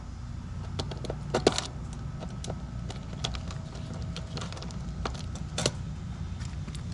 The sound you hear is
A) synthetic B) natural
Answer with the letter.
B